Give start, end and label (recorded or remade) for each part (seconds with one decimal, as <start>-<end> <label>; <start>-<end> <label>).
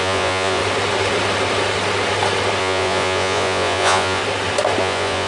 0.0-0.6 remade; 0.6-2.6 recorded; 2.6-4.2 remade; 4.2-4.8 recorded; 4.8-5.3 remade